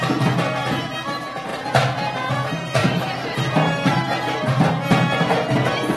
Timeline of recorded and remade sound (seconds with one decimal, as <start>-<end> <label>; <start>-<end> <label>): 0.0-2.8 recorded; 2.8-4.7 remade; 4.7-6.0 recorded